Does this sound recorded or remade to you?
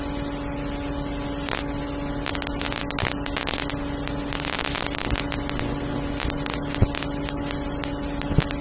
recorded